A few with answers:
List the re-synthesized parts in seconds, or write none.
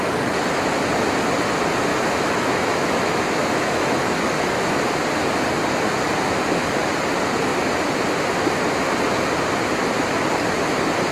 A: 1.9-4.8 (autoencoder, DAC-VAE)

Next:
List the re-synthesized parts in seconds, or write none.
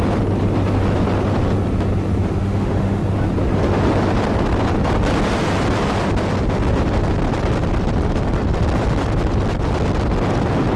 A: 2.4-3.0 (autoencoder, DAC-VAE)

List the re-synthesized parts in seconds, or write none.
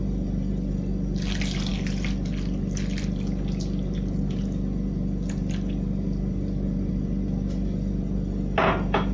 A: none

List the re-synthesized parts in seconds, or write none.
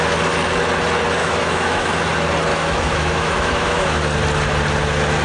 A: 1.2-1.9 (autoencoder, DAC-VAE); 2.5-4.0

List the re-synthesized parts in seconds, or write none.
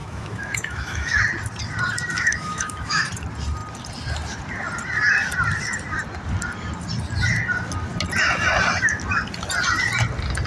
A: 0.0-1.2 (autoencoder, DAC-VAE); 2.1-3.1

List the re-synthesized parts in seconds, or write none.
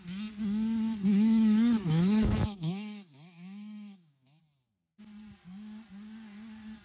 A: 1.1-4.4 (autoencoder, DAC-VAE)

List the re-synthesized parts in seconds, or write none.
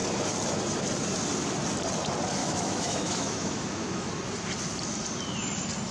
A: 2.4-4.1 (autoencoder, DAC-VAE)